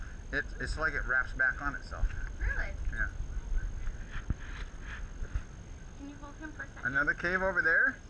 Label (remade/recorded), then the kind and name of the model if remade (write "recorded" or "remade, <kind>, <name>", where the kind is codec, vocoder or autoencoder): recorded